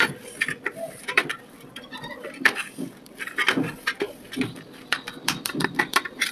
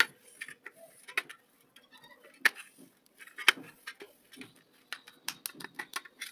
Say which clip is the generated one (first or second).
first